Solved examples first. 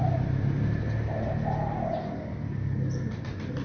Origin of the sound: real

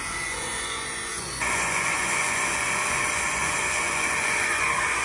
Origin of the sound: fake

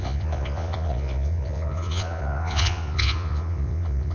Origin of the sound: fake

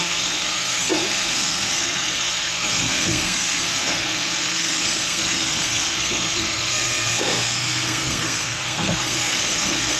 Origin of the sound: fake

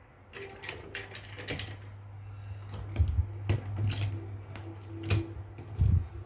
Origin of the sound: real